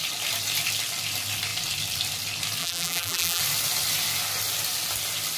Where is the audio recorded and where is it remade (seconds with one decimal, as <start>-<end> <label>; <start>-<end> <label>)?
0.0-2.6 recorded; 2.6-3.4 remade; 3.4-5.4 recorded